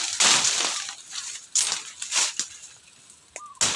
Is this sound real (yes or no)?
yes